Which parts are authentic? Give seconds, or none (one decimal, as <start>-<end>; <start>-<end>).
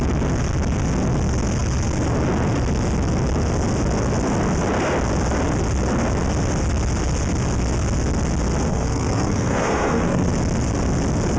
0.0-8.7; 10.3-11.4